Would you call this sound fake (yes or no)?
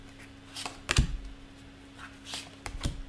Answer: no